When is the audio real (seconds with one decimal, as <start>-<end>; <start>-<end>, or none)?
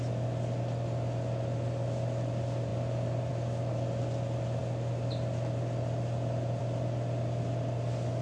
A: 0.0-8.2